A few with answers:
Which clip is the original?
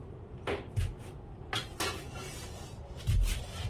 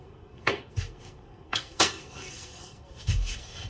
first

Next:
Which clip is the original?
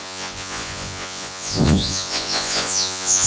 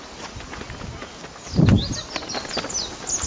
second